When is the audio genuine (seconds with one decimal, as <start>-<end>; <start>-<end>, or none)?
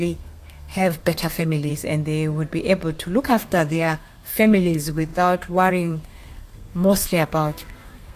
1.7-3.2